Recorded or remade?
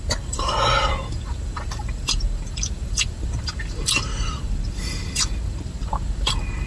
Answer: remade